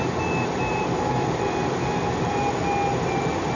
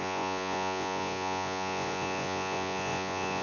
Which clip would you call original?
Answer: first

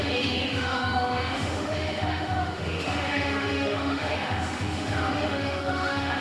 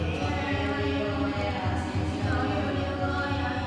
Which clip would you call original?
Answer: second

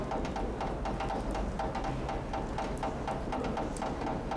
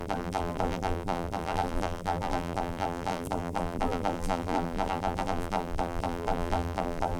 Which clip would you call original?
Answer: first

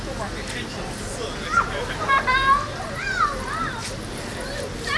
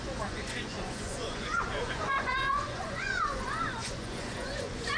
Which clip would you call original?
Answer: first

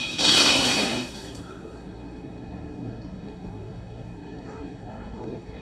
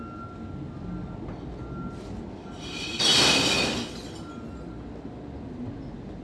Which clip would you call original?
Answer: second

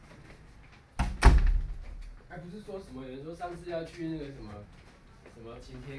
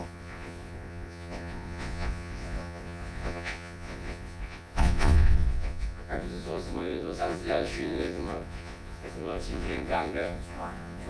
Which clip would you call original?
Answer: first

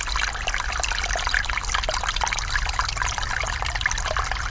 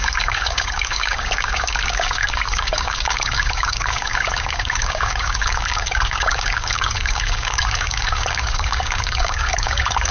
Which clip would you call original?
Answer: first